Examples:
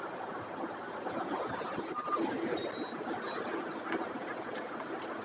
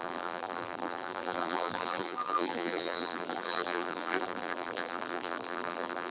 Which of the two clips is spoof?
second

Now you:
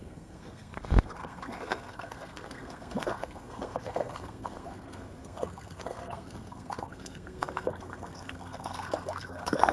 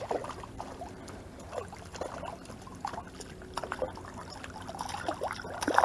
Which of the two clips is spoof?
first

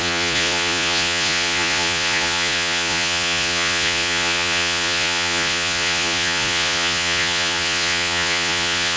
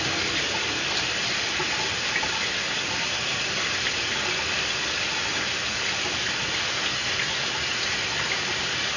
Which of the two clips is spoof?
first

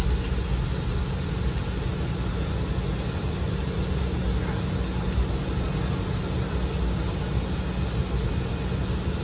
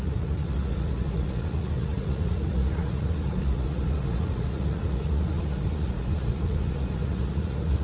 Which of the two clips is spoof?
second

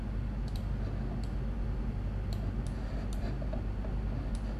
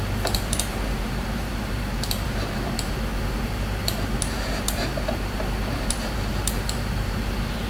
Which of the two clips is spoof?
second